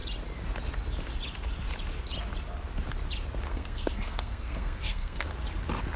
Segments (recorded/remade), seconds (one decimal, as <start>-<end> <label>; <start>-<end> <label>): 0.0-3.5 recorded; 3.5-5.3 remade; 5.3-6.0 recorded